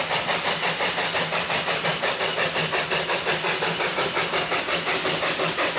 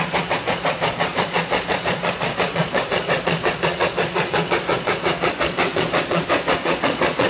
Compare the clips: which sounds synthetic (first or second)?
second